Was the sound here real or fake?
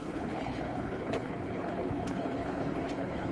fake